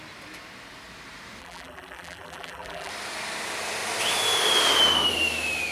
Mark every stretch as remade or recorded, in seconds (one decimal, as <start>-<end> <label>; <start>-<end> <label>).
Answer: 0.0-1.4 recorded; 1.4-2.9 remade; 2.9-5.7 recorded